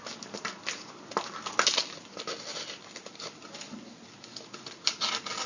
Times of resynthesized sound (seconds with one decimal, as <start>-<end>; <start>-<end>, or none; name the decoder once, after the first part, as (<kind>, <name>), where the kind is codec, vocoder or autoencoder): none